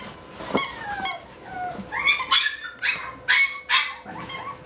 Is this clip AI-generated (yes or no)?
no